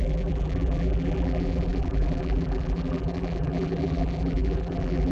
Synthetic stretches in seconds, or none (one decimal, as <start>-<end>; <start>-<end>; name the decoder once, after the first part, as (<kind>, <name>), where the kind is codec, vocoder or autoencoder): 0.0-5.1 (vocoder, BigVGAN v2)